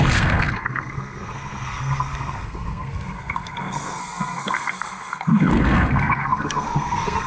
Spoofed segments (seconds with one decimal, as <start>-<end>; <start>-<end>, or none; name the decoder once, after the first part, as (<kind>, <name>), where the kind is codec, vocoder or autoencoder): 0.0-7.3 (codec, SNAC)